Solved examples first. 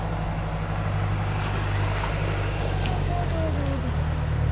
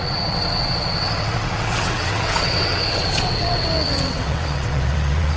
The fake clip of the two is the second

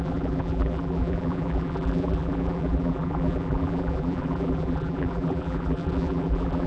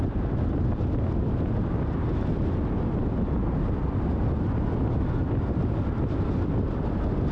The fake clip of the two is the first